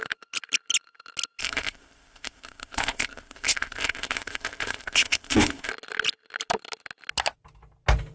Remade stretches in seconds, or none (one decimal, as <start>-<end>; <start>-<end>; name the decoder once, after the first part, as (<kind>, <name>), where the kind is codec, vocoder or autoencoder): 1.4-5.7 (codec, ZipCodec)